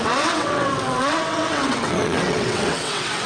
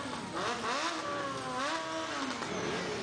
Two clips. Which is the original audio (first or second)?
second